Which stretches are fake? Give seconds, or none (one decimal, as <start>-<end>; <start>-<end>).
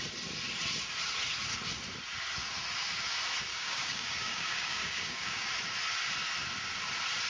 3.5-5.5